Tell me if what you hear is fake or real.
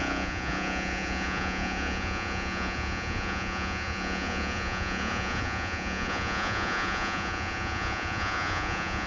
fake